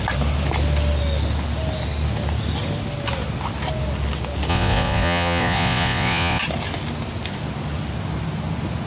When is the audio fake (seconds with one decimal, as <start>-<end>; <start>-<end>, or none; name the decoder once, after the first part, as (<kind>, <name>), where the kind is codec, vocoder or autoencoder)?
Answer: 4.5-6.4 (vocoder, Vocos)